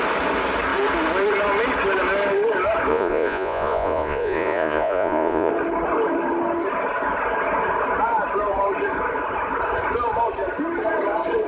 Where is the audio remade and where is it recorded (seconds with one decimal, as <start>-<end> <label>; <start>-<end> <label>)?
0.0-2.9 recorded; 2.9-5.5 remade; 5.5-11.5 recorded